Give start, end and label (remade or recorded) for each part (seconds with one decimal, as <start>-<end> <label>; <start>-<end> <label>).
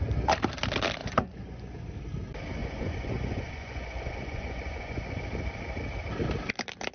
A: 0.0-1.0 recorded; 1.0-1.7 remade; 1.7-2.6 recorded; 2.6-5.2 remade; 5.2-6.9 recorded